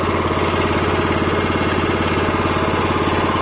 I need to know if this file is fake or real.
real